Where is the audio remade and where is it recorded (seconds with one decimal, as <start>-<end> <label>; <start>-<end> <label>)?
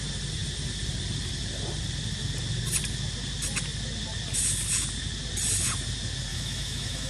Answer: 0.0-6.3 recorded; 6.3-7.1 remade